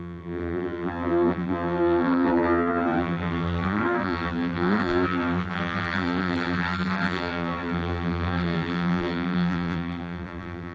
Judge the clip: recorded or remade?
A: remade